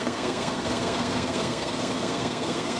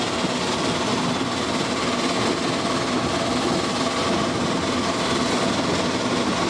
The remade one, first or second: first